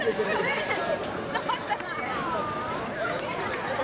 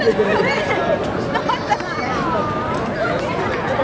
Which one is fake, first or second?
first